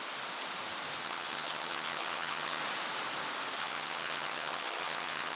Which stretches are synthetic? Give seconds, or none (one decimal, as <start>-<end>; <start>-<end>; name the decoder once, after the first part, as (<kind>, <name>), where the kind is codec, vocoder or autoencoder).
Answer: 1.0-2.6 (vocoder, HiFi-GAN); 3.6-5.4